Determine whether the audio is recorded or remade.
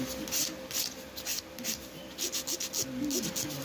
recorded